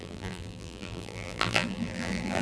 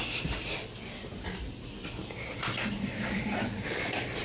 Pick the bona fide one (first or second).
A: second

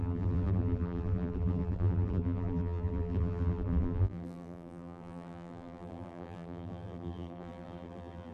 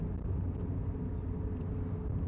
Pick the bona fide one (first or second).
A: second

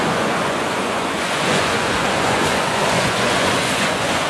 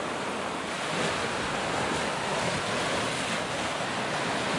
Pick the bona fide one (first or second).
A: second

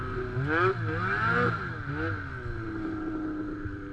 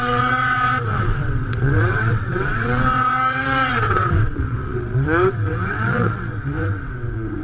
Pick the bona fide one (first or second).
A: first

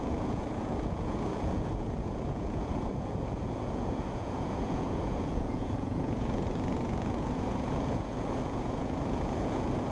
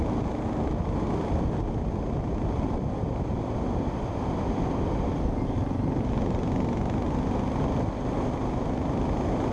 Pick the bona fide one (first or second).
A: second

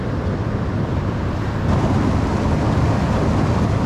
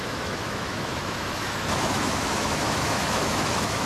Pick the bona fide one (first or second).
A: first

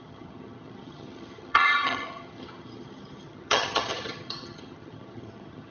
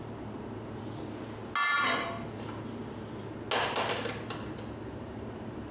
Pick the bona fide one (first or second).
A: second